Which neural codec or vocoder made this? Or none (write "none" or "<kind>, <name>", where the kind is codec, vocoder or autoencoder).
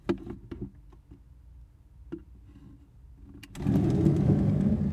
none